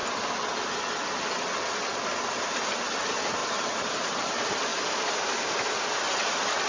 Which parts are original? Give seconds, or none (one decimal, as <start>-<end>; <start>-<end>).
0.0-3.4; 4.3-4.7; 5.5-6.7